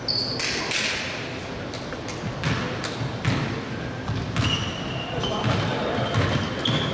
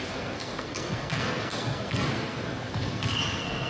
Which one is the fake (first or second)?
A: second